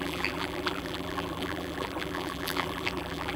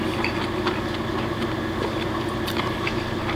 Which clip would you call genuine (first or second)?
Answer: second